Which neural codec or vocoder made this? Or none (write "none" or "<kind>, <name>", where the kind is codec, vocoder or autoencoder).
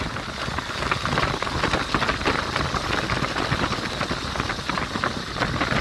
none